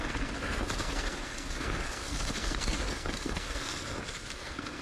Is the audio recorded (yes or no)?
no